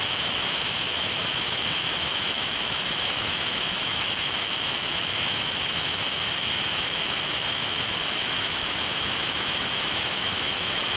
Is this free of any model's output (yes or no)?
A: no